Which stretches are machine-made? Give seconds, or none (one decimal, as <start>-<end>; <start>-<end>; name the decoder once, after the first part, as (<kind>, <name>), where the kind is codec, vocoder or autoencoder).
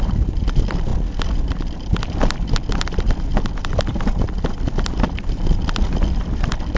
none